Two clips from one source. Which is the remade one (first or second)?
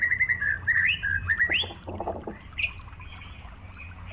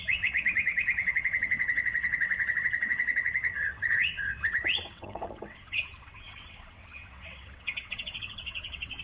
second